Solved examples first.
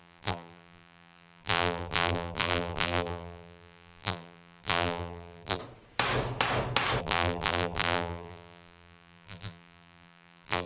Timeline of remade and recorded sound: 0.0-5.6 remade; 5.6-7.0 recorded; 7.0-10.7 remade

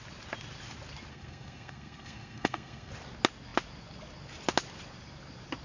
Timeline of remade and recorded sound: 0.0-1.1 recorded; 1.1-2.9 remade; 2.9-5.6 recorded

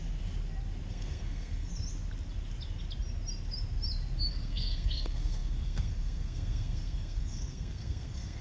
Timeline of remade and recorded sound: 0.0-0.9 recorded; 0.9-1.7 remade; 1.7-4.3 recorded; 4.3-8.4 remade

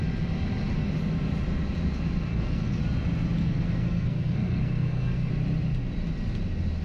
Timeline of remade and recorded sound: 0.0-2.3 recorded; 2.3-2.8 remade; 2.8-3.4 recorded; 3.4-5.3 remade; 5.3-6.8 recorded

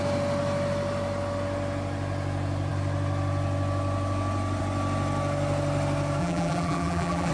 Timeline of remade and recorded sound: 0.0-6.2 recorded; 6.2-7.3 remade

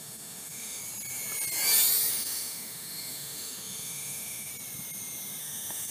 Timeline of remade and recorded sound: 0.0-0.8 remade; 0.8-2.1 recorded; 2.1-4.5 remade; 4.5-5.4 recorded; 5.4-5.9 remade

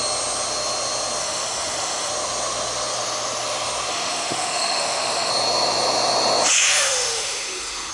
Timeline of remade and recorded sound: 0.0-1.2 recorded; 1.2-2.1 remade; 2.1-3.9 recorded; 3.9-5.3 remade; 5.3-6.6 recorded; 6.6-7.9 remade

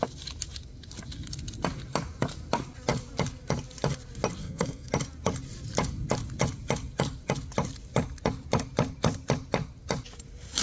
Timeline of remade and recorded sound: 0.0-4.4 recorded; 4.4-4.9 remade; 4.9-10.6 recorded